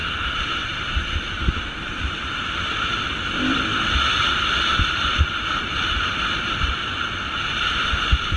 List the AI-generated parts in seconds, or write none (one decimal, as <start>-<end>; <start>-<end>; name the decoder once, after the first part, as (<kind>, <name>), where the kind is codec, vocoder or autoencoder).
0.0-3.7 (vocoder, BigVGAN v2); 7.8-8.4